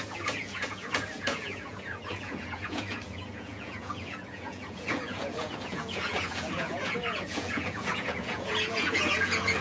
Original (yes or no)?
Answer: no